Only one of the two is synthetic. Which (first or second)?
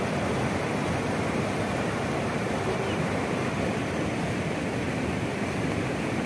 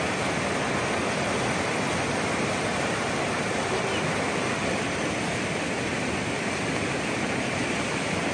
first